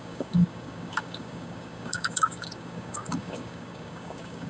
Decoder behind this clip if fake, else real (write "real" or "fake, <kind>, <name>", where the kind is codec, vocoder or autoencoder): fake, codec, DAC